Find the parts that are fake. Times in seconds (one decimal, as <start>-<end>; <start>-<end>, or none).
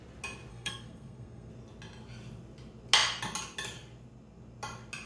0.5-1.5